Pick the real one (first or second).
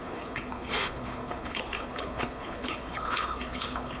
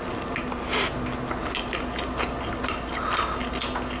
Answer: second